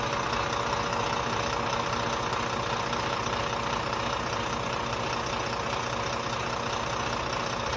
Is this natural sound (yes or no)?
yes